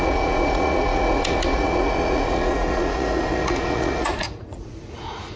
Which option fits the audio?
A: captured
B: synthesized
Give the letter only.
B